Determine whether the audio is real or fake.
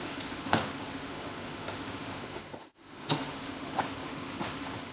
fake